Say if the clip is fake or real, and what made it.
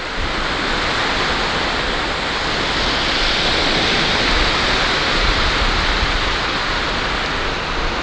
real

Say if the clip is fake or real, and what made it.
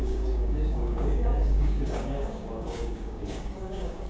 fake, codec, DAC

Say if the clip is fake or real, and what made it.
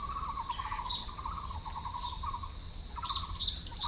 real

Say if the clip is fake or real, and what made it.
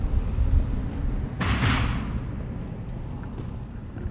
real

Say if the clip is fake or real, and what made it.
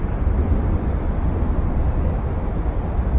real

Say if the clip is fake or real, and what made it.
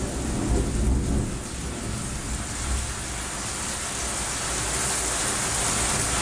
real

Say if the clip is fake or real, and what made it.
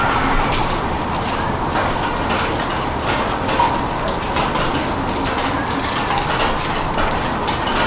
real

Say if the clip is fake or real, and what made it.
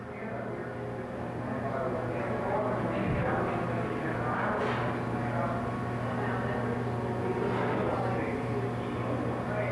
real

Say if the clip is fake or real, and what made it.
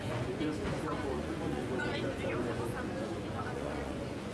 fake, vocoder, Vocos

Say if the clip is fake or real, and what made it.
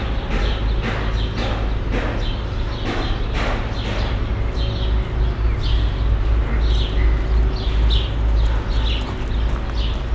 real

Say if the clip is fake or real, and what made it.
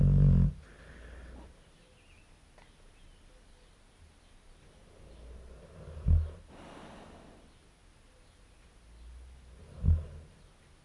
real